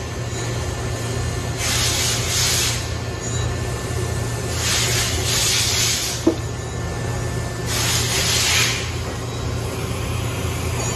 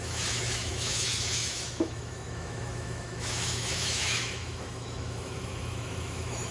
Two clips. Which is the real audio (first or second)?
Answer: first